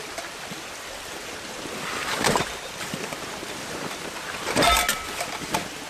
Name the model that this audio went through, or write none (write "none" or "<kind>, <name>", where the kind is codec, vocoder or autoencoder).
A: none